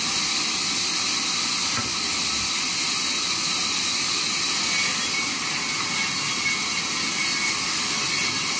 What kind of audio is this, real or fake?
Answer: real